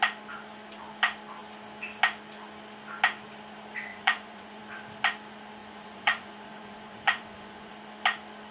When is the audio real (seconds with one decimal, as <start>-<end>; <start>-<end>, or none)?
0.0-3.9; 4.6-5.6; 7.7-8.5